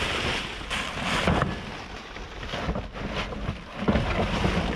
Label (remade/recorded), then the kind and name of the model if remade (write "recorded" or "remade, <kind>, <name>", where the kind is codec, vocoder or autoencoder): recorded